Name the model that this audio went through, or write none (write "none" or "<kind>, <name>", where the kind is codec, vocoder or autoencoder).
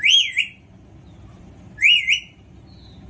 none